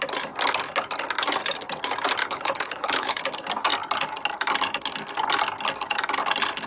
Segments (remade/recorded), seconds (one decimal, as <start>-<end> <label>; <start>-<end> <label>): 0.0-2.2 recorded; 2.2-3.2 remade; 3.2-6.7 recorded